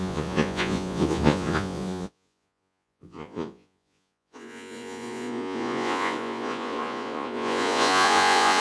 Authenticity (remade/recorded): remade